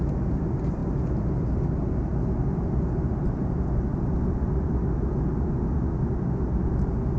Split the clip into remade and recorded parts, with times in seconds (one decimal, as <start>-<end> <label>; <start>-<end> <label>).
0.0-7.2 recorded